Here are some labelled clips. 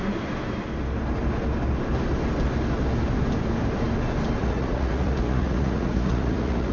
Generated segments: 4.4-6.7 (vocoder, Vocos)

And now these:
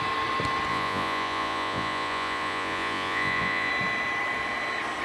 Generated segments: 0.7-3.7 (vocoder, Vocos)